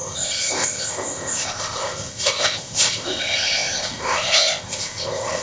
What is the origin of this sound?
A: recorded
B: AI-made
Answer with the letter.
B